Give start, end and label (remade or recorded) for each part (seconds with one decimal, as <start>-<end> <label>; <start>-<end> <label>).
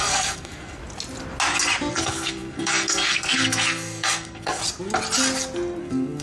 0.0-0.8 remade; 0.8-1.9 recorded; 1.9-4.6 remade; 4.6-5.8 recorded; 5.8-6.2 remade